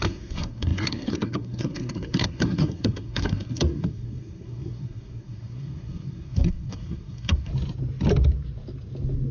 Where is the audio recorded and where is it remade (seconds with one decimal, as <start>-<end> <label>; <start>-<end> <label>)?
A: 0.0-7.5 remade; 7.5-9.3 recorded